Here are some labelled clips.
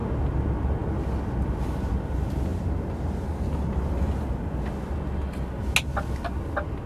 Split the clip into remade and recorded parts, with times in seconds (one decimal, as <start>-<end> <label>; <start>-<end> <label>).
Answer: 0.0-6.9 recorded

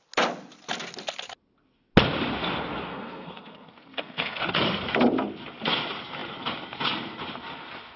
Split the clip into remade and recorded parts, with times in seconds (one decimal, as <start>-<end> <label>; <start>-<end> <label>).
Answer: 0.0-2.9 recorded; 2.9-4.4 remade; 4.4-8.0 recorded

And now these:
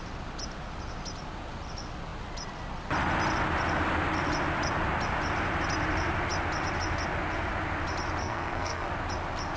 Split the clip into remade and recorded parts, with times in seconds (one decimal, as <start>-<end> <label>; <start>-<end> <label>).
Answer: 0.0-8.2 recorded; 8.2-8.9 remade; 8.9-9.6 recorded

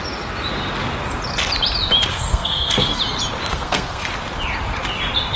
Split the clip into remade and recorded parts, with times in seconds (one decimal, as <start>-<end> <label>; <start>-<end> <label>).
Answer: 0.0-2.1 recorded; 2.1-3.0 remade; 3.0-3.5 recorded; 3.5-4.1 remade; 4.1-5.4 recorded